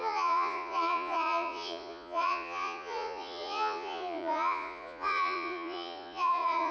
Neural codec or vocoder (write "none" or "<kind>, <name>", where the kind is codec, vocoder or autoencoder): vocoder, Vocos